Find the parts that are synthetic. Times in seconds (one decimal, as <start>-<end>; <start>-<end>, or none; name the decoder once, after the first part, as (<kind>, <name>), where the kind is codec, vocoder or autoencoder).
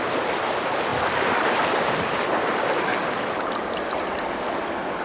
0.9-2.4 (vocoder, BigVGAN v2)